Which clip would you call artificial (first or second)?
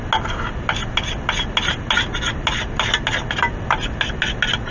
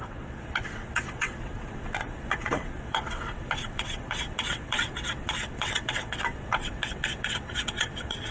second